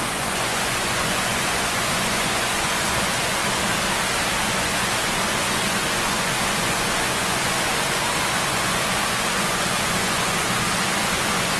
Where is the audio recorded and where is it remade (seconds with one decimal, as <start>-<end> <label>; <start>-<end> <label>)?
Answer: 0.0-3.4 remade; 3.4-4.4 recorded; 4.4-11.6 remade